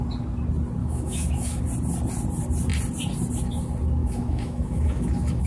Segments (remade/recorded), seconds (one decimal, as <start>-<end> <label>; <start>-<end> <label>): 0.0-0.8 recorded; 0.8-1.6 remade; 1.6-4.0 recorded; 4.0-5.5 remade